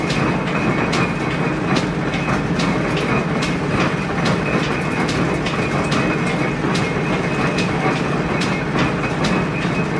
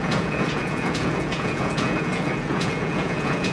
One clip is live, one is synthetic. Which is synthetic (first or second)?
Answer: second